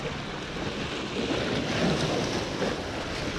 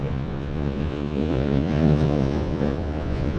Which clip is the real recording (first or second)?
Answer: first